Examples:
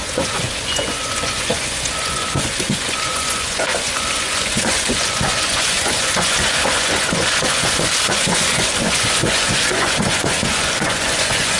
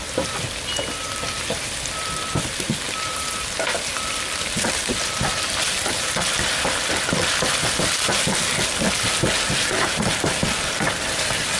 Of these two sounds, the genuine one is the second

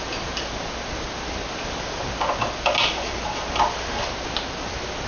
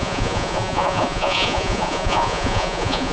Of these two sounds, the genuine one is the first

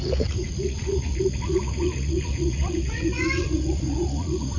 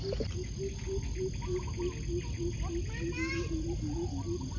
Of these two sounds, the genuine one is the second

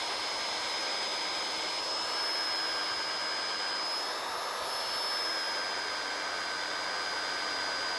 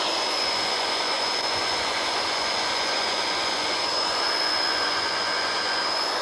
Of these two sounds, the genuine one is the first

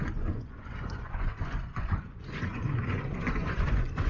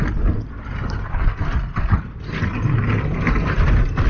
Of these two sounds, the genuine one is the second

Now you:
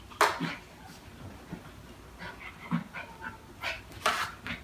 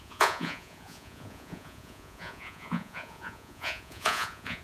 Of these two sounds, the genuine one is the first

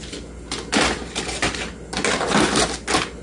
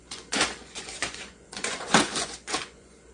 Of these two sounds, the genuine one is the first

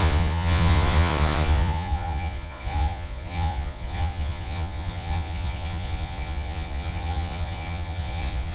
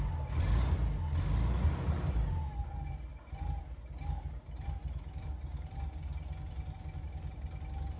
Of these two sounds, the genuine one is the second